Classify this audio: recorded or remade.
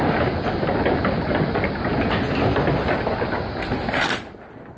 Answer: recorded